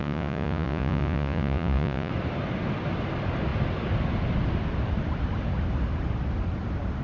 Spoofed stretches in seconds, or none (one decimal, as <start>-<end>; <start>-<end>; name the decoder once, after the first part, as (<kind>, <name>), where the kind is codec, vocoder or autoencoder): 0.0-2.1 (vocoder, Vocos)